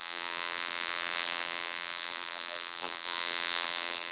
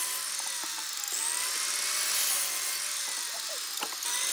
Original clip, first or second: second